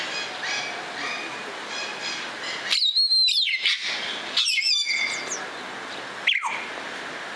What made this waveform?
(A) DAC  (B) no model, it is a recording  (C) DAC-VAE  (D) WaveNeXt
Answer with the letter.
B